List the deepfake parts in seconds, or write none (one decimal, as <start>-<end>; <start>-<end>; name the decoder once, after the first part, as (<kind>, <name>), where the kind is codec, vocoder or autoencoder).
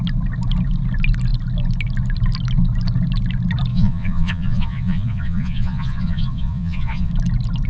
3.7-7.1 (vocoder, Vocos)